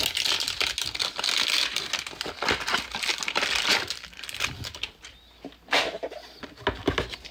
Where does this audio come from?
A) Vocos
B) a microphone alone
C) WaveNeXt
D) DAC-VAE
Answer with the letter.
B